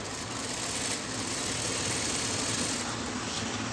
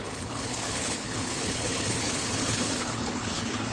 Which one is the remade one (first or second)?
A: second